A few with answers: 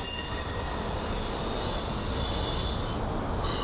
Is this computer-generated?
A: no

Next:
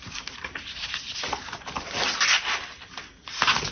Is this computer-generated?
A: no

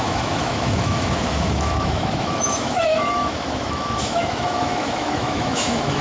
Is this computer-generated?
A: yes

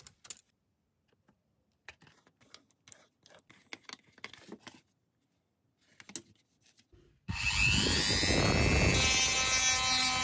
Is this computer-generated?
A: no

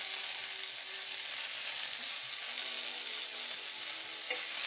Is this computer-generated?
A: no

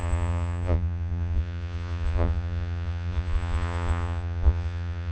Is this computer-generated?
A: yes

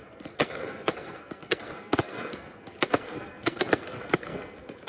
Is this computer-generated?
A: yes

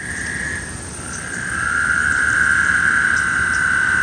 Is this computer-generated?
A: no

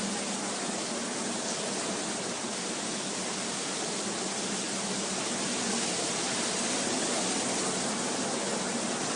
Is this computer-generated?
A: no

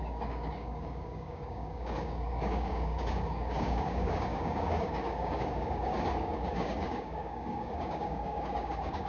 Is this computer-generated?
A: yes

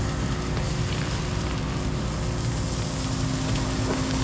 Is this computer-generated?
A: no